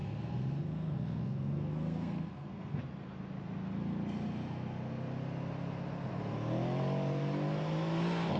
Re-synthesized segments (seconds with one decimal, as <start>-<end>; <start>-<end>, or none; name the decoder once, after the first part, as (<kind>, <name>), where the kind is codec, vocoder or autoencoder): 0.0-2.8 (codec, SNAC)